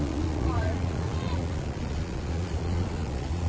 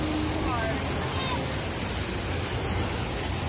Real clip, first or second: second